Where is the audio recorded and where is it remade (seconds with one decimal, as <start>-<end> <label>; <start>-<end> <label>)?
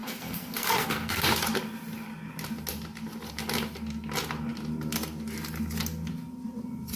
0.0-1.2 remade; 1.2-7.0 recorded